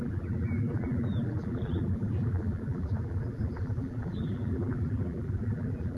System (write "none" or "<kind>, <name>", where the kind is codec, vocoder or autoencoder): vocoder, BigVGAN v2